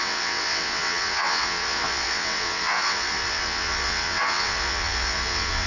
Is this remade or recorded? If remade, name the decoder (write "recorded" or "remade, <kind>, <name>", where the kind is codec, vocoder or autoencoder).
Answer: remade, vocoder, WaveNeXt